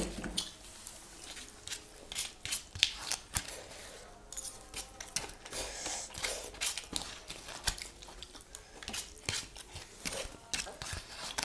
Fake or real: real